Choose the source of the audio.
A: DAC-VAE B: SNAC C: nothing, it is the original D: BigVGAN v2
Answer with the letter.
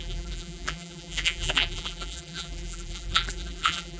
D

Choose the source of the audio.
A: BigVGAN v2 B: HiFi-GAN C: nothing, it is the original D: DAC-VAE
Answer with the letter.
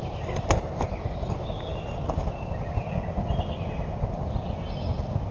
C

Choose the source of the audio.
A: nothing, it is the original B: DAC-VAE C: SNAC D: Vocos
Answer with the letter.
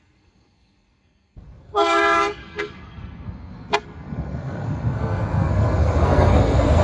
C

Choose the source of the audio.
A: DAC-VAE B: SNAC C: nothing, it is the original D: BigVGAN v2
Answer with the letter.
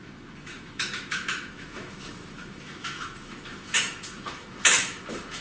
A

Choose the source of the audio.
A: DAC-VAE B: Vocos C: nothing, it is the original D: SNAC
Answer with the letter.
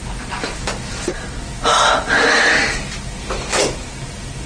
C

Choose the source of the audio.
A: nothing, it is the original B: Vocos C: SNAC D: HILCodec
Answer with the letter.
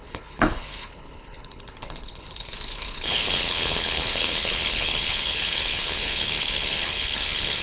D